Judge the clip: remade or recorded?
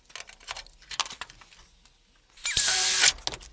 recorded